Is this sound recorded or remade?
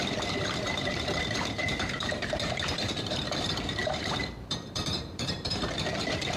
remade